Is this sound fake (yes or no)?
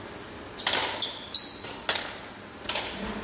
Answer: no